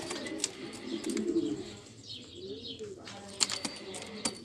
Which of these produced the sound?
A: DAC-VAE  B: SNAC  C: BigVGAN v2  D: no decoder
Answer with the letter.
D